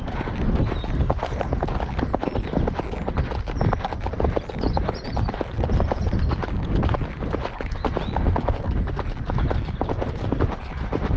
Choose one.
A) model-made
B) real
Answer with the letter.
B